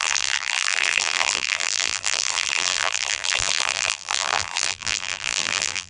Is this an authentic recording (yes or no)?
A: no